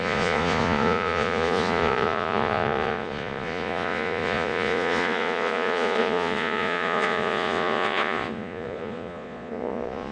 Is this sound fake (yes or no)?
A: yes